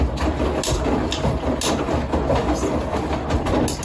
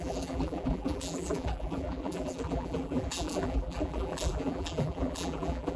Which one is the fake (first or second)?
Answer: second